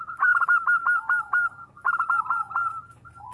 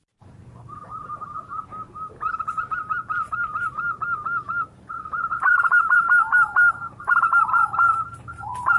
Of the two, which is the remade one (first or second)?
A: second